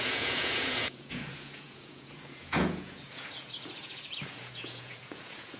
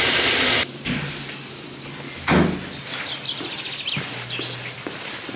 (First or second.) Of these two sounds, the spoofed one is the first